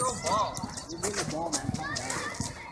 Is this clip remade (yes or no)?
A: no